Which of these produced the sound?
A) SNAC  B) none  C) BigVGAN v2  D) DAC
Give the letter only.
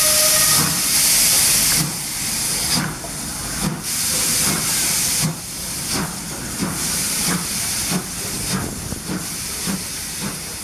B